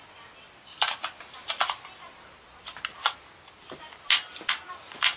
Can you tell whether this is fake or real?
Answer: real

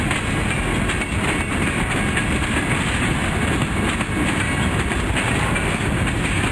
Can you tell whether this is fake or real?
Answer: real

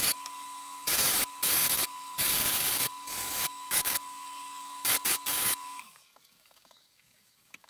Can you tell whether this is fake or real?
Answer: fake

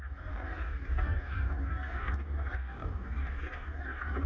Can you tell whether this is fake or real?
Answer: fake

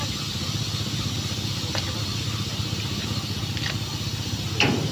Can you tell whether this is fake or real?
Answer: real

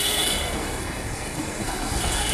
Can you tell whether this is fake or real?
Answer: fake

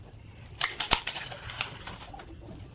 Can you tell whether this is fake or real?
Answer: real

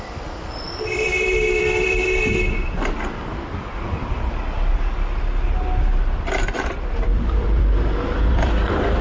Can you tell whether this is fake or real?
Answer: fake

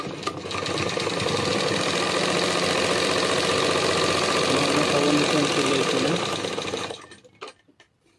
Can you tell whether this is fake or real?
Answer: real